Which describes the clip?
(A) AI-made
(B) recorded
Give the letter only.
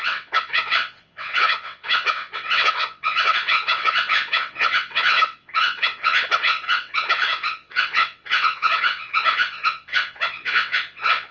A